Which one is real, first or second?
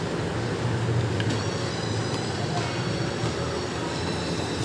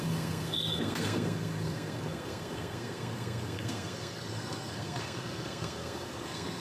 first